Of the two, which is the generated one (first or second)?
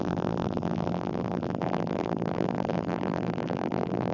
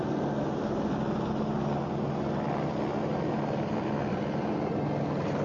first